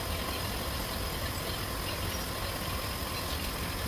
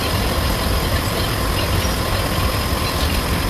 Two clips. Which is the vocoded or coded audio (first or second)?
second